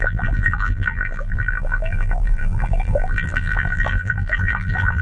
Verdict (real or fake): fake